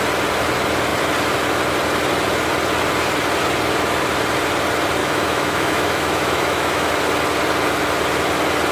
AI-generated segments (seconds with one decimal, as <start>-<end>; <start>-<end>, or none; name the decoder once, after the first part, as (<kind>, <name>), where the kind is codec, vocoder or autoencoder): 5.0-6.9 (autoencoder, DAC-VAE)